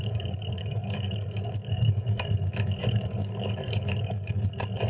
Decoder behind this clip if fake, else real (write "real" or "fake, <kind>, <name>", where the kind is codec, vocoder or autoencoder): fake, codec, DAC